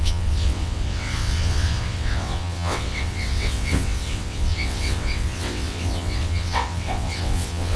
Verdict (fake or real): fake